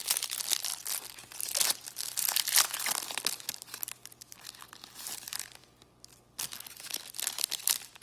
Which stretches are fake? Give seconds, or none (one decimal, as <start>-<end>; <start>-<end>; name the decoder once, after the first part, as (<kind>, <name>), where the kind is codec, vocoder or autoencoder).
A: none